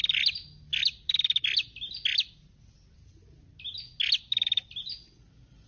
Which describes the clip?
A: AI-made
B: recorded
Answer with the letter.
B